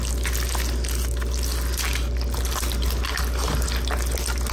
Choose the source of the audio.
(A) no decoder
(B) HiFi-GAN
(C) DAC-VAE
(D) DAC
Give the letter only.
A